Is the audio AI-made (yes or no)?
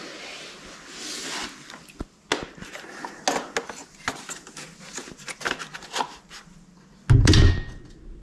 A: no